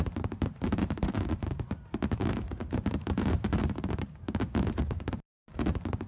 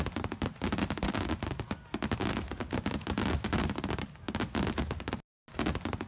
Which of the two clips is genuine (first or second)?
second